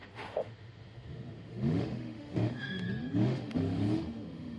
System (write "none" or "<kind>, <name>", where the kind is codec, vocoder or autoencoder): autoencoder, DAC-VAE